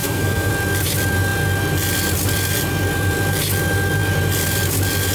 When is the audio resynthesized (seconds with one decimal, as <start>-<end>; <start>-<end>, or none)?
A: 0.0-0.5